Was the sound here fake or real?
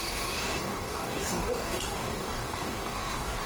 fake